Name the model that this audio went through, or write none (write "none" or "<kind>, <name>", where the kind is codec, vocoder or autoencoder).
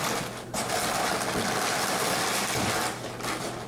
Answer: none